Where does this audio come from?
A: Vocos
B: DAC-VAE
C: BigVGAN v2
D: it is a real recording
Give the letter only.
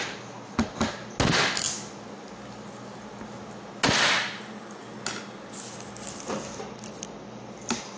D